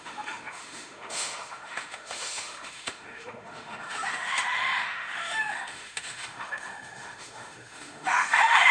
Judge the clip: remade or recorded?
remade